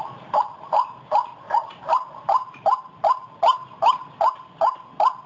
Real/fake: real